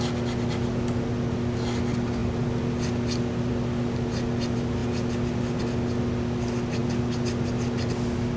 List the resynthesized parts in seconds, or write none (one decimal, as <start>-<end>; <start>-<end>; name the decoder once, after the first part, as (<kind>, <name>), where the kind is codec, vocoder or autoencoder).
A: none